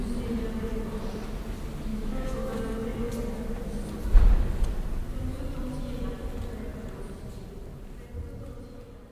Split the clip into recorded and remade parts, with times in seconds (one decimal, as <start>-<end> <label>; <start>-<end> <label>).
0.0-1.9 recorded; 1.9-2.6 remade; 2.6-9.1 recorded